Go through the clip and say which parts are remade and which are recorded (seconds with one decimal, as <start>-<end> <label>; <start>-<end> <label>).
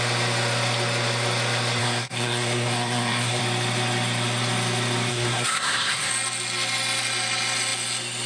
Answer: 0.0-1.8 recorded; 1.8-3.4 remade; 3.4-5.1 recorded; 5.1-6.1 remade; 6.1-8.3 recorded